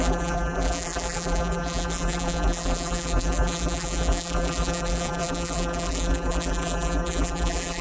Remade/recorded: remade